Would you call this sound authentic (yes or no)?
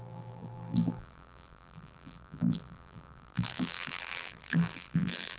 no